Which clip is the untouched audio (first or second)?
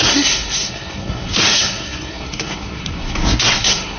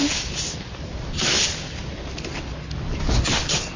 second